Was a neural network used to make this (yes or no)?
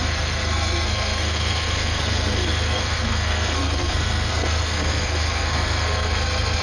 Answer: yes